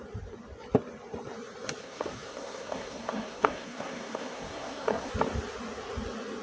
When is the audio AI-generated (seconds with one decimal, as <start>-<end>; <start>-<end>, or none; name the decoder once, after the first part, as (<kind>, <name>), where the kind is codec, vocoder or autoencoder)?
1.8-5.1 (codec, SNAC)